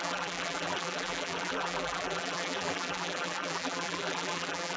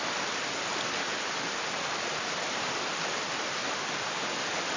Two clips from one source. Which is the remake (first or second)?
first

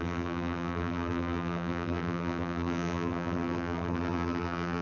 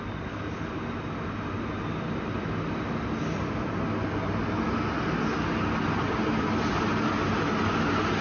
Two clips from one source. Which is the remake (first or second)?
first